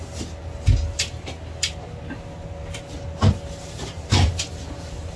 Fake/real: real